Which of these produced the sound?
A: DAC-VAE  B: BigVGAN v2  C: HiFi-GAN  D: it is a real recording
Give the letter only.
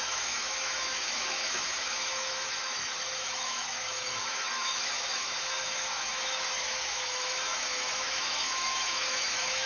A